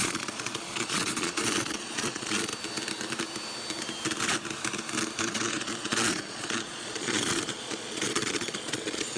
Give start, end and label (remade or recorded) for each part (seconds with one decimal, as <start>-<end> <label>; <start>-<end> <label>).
0.0-2.5 remade; 2.5-5.2 recorded; 5.2-9.2 remade